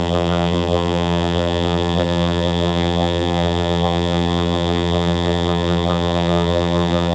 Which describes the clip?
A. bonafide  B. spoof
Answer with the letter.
B